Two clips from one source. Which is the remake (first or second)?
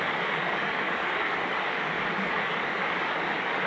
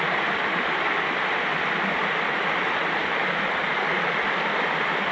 first